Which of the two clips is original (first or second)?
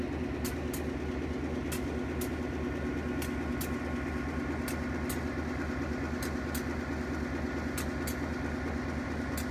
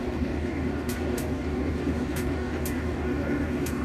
first